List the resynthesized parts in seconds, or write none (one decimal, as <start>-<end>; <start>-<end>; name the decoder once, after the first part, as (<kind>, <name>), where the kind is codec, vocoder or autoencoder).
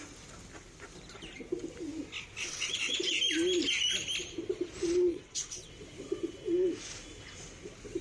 2.4-3.1 (vocoder, WaveNeXt); 5.1-5.7